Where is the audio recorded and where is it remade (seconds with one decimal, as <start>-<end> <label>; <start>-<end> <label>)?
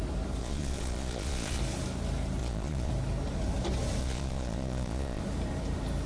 0.0-0.4 recorded; 0.4-1.6 remade; 1.6-2.4 recorded; 2.4-2.9 remade; 2.9-4.0 recorded; 4.0-5.2 remade; 5.2-6.1 recorded